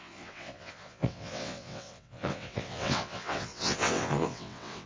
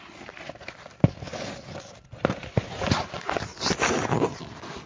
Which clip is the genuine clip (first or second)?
second